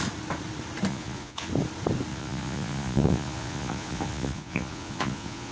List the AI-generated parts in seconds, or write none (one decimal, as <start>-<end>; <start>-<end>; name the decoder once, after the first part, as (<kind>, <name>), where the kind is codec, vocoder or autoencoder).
0.9-1.5 (vocoder, Vocos); 2.1-5.5

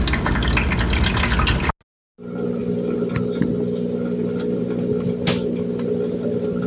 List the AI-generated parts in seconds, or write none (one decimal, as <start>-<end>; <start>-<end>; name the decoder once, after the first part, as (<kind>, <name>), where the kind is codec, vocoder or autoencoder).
none